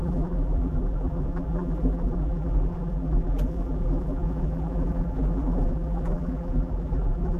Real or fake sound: fake